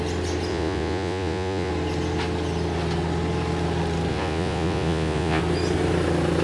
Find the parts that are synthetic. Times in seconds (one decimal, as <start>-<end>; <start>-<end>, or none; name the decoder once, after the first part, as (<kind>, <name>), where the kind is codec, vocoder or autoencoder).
0.5-1.7 (vocoder, Vocos); 4.1-5.4